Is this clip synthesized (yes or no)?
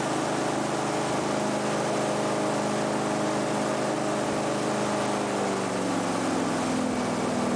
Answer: no